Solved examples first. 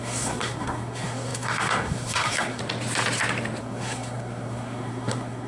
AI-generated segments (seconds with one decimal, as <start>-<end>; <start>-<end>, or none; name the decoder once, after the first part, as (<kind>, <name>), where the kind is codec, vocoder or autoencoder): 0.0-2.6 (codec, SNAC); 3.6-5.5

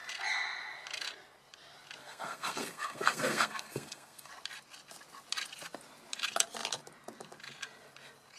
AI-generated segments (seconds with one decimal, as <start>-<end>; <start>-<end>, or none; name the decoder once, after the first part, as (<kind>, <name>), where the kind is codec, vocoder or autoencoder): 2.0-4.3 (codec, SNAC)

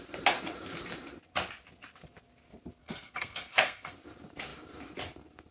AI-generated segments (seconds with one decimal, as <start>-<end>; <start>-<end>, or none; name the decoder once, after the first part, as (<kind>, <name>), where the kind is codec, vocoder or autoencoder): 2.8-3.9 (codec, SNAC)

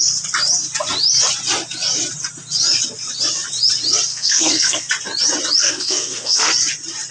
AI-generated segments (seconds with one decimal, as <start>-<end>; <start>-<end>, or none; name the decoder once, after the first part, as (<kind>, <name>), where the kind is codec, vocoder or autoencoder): 4.1-4.9 (codec, SNAC); 5.6-6.5

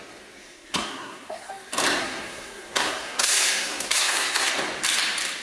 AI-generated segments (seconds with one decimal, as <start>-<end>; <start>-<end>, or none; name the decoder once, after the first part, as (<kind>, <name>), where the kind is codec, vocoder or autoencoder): 0.4-1.5 (codec, SNAC); 2.0-4.5

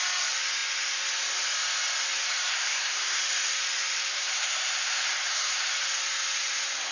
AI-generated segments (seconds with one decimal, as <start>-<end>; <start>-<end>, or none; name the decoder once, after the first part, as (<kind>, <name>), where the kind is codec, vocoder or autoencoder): 2.5-3.2 (codec, SNAC); 4.1-5.7

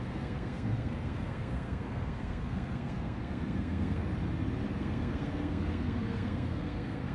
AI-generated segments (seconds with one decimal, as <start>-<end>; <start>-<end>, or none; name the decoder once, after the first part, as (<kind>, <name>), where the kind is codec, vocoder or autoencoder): 0.0-4.1 (codec, SNAC); 4.8-7.1